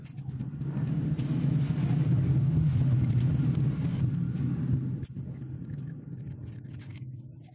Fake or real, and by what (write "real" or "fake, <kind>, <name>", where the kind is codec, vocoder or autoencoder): real